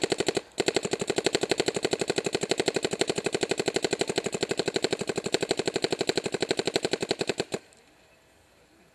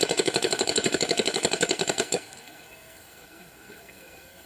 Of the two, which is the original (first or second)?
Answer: first